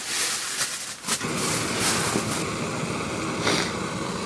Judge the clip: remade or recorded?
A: recorded